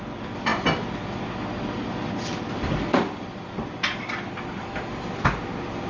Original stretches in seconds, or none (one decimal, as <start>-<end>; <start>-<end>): 0.0-5.9